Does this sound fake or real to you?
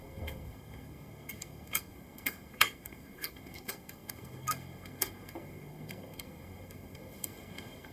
fake